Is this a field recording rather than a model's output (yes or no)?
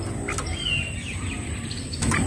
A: yes